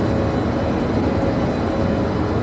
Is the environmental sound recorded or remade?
recorded